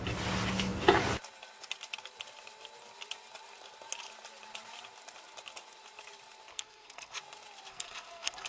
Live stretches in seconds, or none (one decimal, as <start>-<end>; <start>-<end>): 0.0-6.5; 7.2-7.7